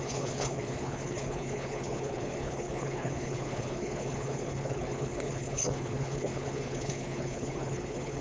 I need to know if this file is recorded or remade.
remade